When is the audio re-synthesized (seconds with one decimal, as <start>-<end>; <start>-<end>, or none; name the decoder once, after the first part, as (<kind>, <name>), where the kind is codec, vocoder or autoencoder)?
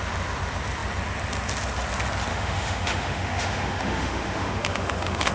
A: 2.3-5.3 (autoencoder, DAC-VAE)